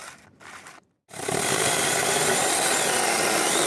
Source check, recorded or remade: recorded